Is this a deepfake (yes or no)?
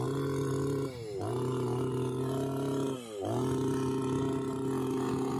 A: no